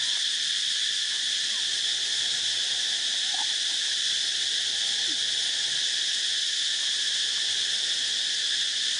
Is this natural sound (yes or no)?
yes